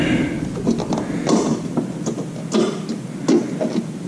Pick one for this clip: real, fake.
real